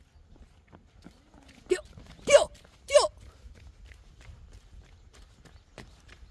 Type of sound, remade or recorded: recorded